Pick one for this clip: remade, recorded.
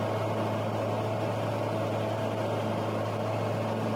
recorded